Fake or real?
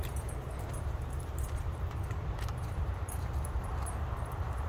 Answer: fake